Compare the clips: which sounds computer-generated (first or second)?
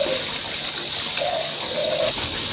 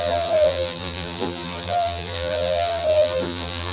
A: second